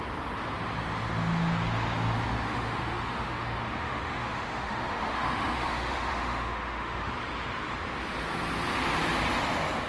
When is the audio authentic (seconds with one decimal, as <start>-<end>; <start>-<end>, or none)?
0.0-2.5; 7.1-9.9